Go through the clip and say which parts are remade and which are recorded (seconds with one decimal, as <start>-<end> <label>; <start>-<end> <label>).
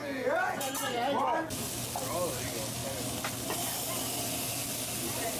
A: 0.0-0.7 remade; 0.7-5.4 recorded